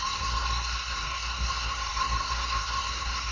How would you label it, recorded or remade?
remade